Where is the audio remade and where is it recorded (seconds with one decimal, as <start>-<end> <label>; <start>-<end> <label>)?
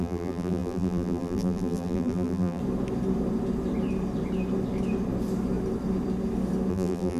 0.0-2.6 remade; 2.6-6.7 recorded; 6.7-7.2 remade